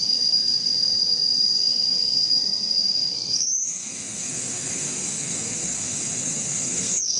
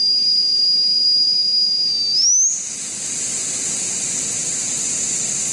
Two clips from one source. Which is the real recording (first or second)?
second